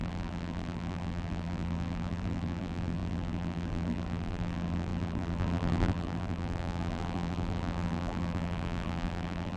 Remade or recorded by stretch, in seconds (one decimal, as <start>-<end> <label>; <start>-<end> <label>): 0.0-9.6 remade

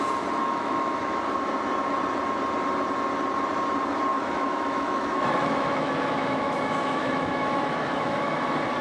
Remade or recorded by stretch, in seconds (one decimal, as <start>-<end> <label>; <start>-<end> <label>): 0.0-0.4 recorded; 0.4-1.2 remade; 1.2-4.1 recorded; 4.1-8.4 remade; 8.4-8.8 recorded